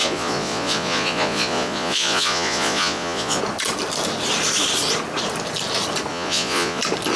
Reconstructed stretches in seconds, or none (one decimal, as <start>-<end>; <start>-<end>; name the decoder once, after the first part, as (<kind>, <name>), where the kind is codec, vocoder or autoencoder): 0.0-3.4 (vocoder, Vocos); 6.1-6.8